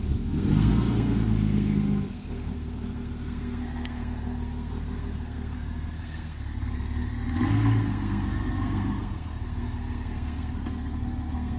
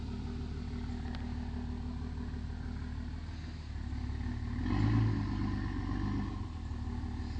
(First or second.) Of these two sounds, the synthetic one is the first